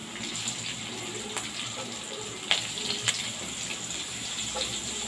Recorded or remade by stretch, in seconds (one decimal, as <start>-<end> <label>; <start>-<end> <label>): 0.0-5.1 recorded